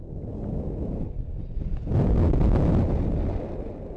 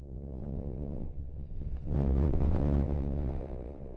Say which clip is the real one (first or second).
first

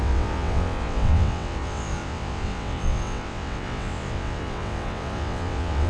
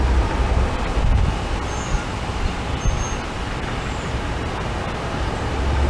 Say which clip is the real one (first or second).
second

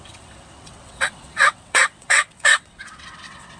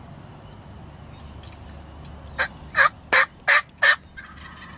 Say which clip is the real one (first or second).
second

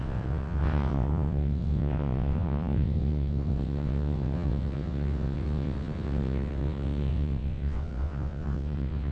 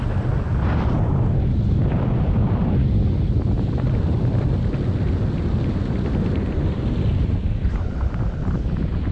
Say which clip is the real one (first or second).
second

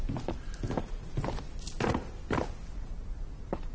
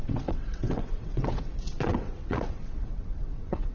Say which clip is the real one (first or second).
first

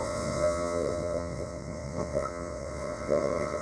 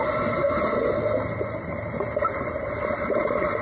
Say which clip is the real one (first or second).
second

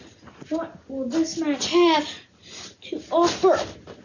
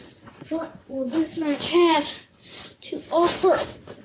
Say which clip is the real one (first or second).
first